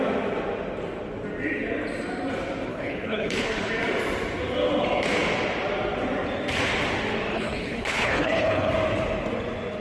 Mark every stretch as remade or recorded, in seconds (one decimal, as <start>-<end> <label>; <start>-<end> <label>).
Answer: 0.0-2.7 recorded; 2.7-3.7 remade; 3.7-7.3 recorded; 7.3-8.7 remade; 8.7-9.8 recorded